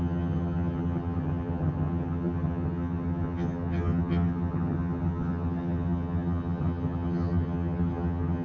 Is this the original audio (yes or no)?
no